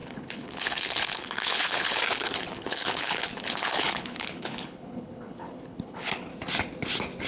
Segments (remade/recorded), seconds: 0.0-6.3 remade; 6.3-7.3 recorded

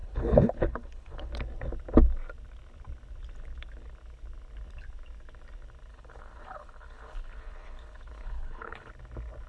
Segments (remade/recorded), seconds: 0.0-1.3 remade; 1.3-5.9 recorded; 5.9-8.9 remade; 8.9-9.5 recorded

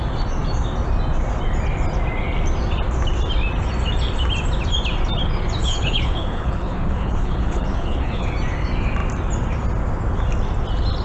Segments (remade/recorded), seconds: 0.0-5.6 recorded; 5.6-8.3 remade; 8.3-11.0 recorded

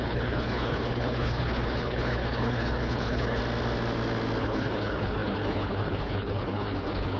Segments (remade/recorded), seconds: 0.0-3.4 remade; 3.4-4.4 recorded; 4.4-7.2 remade